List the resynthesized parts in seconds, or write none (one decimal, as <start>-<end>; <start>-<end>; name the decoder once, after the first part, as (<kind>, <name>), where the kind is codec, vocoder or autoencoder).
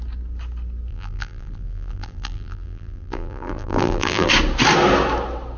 0.9-4.3 (vocoder, BigVGAN v2)